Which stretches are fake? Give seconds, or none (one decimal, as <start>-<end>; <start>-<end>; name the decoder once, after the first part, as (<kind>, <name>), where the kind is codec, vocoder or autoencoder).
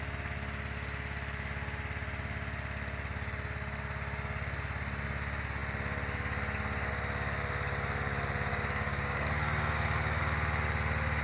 8.5-10.2 (codec, DAC)